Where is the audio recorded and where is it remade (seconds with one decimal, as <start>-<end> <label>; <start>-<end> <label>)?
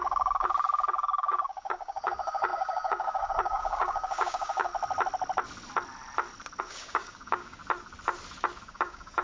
0.0-4.7 remade; 4.7-6.6 recorded; 6.6-7.6 remade; 7.6-8.6 recorded; 8.6-9.2 remade